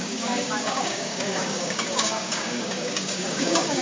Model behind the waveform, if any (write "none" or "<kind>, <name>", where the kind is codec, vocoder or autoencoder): codec, DAC